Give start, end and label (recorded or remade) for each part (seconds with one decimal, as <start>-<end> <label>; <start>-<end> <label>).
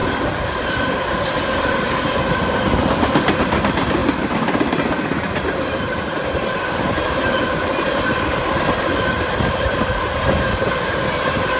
0.0-11.6 recorded